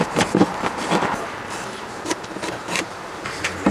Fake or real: fake